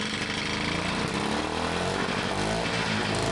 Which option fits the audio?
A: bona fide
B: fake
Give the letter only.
A